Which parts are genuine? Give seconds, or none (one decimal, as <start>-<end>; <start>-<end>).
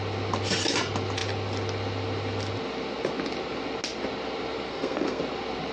0.0-4.7; 5.2-5.7